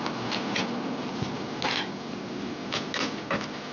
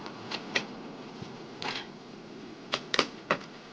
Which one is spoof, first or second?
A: second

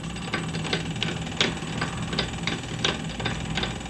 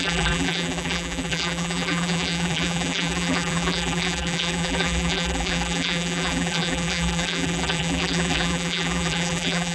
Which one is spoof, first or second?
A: second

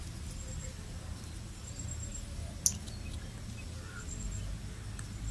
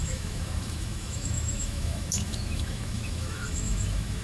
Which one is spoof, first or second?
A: second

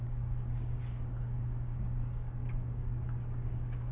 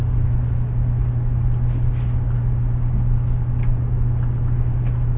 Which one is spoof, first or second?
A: first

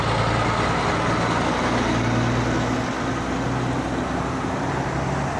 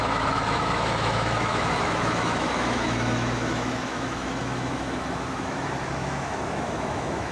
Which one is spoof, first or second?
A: second